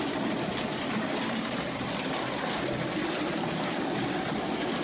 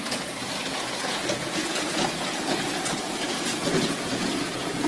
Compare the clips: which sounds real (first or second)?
first